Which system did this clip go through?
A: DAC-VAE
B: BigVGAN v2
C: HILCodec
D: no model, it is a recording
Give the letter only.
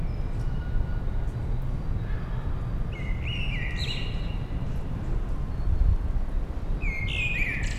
D